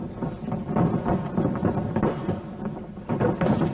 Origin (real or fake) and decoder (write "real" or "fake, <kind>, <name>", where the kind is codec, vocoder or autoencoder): real